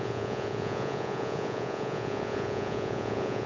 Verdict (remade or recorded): remade